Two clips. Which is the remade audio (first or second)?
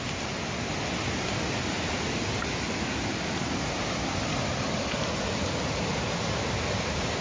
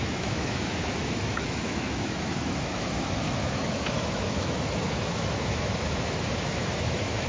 second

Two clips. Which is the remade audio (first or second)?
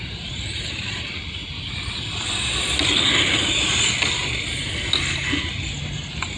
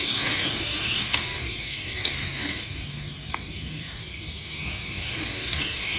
second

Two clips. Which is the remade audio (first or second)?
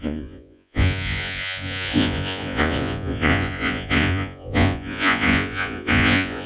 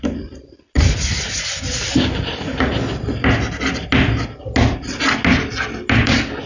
first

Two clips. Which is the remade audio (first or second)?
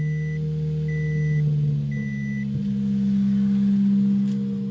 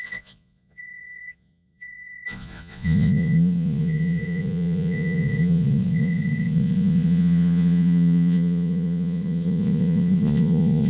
second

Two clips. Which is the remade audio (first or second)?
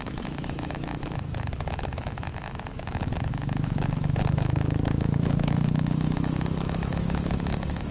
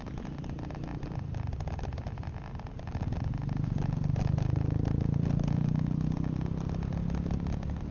first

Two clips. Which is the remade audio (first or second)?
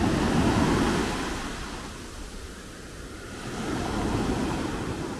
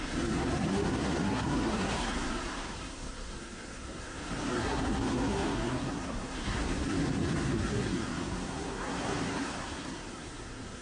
second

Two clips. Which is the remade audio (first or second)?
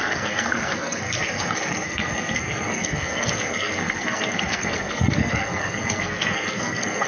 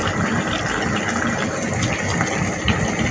first